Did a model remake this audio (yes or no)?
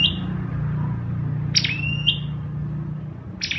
no